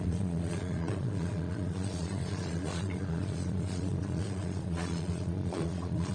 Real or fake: fake